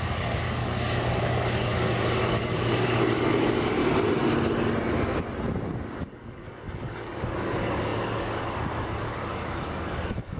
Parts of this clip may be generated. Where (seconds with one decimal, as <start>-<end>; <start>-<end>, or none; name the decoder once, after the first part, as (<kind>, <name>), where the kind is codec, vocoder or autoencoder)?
0.0-3.8 (codec, DAC); 6.0-10.4